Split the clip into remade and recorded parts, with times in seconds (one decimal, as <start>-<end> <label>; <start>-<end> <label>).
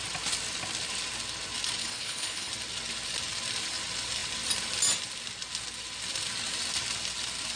0.0-1.8 recorded; 1.8-2.5 remade; 2.5-7.6 recorded